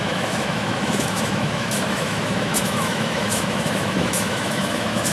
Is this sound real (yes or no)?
no